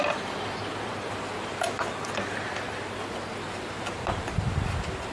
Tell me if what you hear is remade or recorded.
recorded